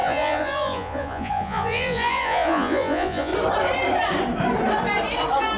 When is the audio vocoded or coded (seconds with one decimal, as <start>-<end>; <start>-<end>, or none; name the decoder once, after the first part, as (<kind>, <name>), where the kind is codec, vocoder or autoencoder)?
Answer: 0.0-3.3 (vocoder, Vocos)